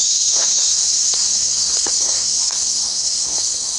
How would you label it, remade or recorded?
remade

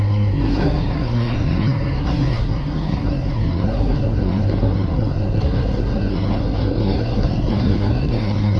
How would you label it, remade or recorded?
remade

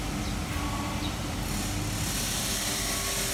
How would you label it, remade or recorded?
recorded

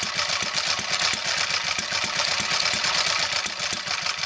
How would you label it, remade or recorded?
recorded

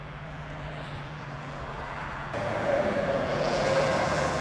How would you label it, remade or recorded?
remade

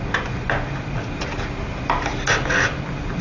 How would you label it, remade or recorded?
recorded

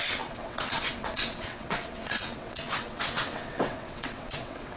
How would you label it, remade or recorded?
remade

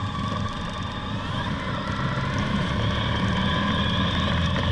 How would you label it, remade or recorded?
recorded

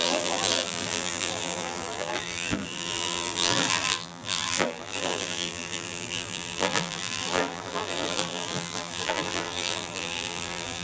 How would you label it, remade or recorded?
remade